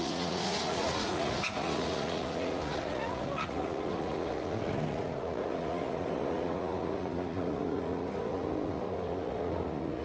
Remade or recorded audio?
remade